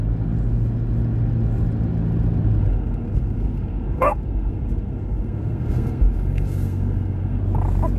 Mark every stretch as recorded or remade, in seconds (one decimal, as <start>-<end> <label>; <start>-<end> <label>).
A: 0.0-2.6 recorded; 2.6-7.4 remade; 7.4-8.0 recorded